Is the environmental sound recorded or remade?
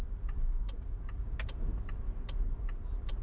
recorded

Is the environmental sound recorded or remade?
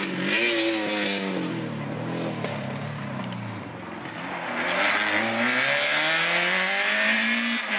recorded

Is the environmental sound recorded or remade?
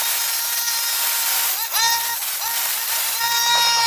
recorded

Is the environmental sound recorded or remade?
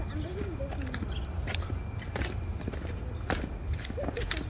recorded